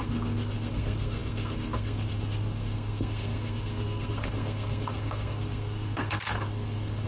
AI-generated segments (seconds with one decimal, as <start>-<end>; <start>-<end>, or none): 0.0-7.1